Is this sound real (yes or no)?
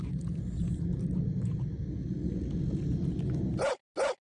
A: yes